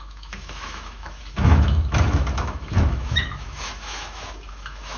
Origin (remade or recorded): remade